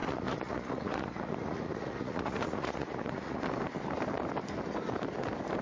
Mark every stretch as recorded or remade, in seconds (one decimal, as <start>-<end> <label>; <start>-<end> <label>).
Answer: 0.0-3.4 remade; 3.4-5.6 recorded